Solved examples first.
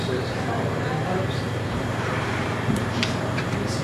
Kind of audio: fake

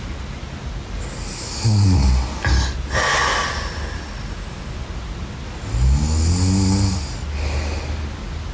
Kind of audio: real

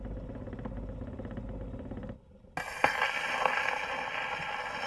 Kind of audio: real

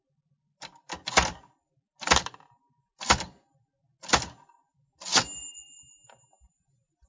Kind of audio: real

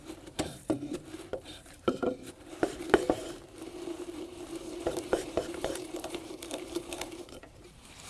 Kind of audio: fake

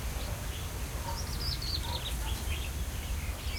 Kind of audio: real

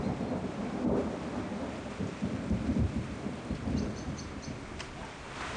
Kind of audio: fake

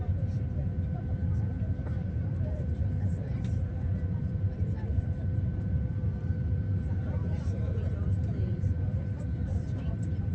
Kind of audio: fake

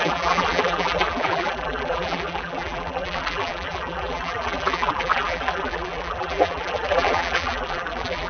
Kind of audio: fake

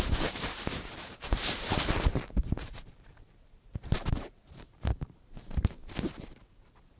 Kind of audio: fake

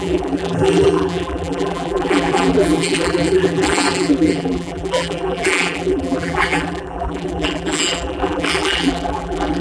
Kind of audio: fake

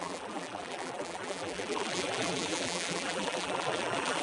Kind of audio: fake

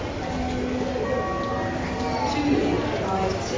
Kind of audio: real